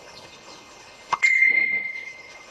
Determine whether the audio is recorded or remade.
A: remade